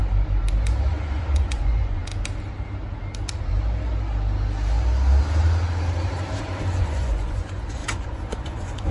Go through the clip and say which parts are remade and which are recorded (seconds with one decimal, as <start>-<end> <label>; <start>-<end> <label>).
0.0-0.9 recorded; 0.9-2.1 remade; 2.1-6.4 recorded; 6.4-8.9 remade